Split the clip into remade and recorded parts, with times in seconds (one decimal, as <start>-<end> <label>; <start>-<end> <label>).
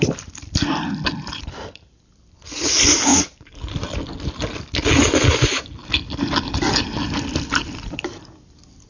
0.0-3.1 remade; 3.1-7.5 recorded; 7.5-8.9 remade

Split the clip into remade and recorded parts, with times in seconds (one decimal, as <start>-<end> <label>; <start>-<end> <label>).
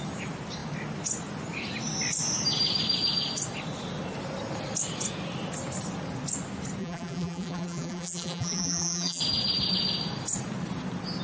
0.0-6.8 recorded; 6.8-9.2 remade; 9.2-11.2 recorded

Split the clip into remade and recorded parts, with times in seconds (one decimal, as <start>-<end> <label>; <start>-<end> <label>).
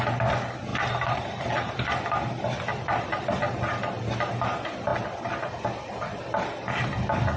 0.0-0.7 recorded; 0.7-1.7 remade; 1.7-7.4 recorded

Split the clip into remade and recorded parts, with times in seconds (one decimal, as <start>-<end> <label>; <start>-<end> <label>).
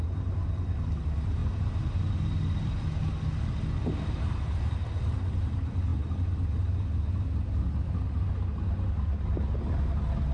0.0-1.4 recorded; 1.4-2.1 remade; 2.1-10.3 recorded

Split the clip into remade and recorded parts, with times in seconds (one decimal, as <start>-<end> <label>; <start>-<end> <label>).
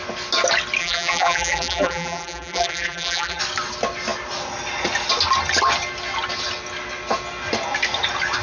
0.0-0.8 recorded; 0.8-3.4 remade; 3.4-8.4 recorded